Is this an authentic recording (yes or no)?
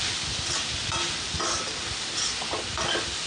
yes